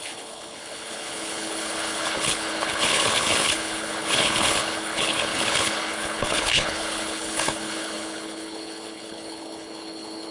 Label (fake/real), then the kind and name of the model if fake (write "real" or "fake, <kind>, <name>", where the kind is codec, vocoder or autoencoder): fake, codec, HILCodec